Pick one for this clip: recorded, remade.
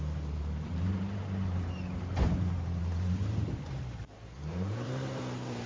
remade